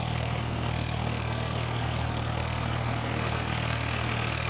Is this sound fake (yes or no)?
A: yes